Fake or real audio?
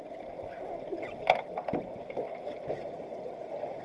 real